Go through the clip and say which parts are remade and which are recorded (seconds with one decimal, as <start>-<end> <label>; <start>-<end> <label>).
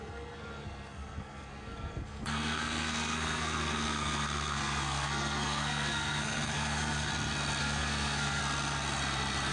0.0-7.1 remade; 7.1-7.6 recorded; 7.6-8.4 remade; 8.4-9.5 recorded